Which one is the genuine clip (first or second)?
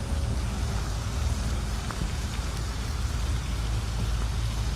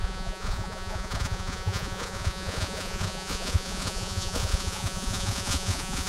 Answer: first